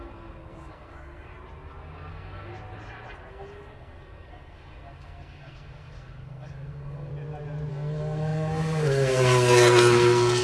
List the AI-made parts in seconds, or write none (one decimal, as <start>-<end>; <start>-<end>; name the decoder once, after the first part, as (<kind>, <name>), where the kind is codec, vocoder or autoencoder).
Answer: 0.0-1.3 (codec, SNAC); 2.1-2.5; 3.3-7.1; 7.7-10.4